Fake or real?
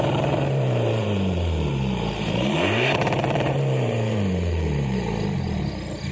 fake